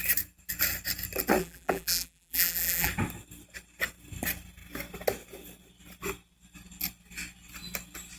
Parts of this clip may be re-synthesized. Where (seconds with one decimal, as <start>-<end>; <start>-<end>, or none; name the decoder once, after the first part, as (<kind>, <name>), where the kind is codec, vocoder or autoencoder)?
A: 1.4-2.9 (vocoder, BigVGAN v2)